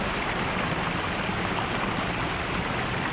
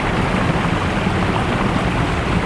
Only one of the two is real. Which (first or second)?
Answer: first